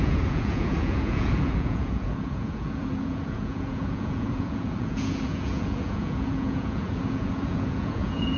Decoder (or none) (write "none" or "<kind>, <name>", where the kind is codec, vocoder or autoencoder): vocoder, Vocos